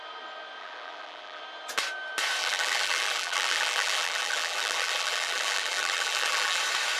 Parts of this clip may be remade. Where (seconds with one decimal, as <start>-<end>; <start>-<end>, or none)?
0.6-1.4; 2.4-6.6

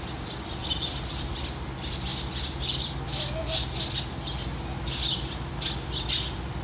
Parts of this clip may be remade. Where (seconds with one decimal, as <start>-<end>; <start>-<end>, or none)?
none

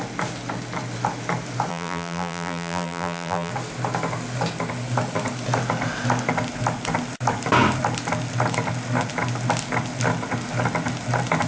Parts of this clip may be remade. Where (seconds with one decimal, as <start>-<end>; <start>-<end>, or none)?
1.7-3.5

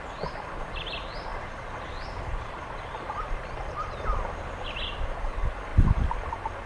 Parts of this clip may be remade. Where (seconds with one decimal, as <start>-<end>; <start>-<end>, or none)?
1.3-2.9; 5.7-6.3

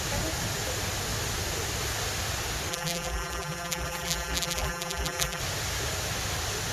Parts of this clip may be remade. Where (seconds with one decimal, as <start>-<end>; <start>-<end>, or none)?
2.7-5.4

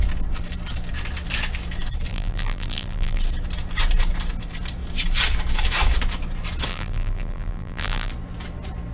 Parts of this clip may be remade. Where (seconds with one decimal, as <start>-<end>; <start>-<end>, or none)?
2.1-3.2; 6.7-8.1

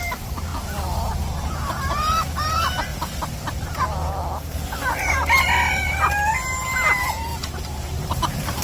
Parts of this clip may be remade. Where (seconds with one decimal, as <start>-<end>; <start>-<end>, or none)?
0.0-0.5; 1.3-4.2; 6.4-7.3; 7.8-8.6

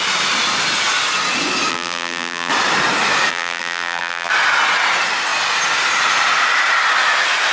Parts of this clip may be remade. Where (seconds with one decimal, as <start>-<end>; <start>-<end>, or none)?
1.7-2.5; 3.3-4.3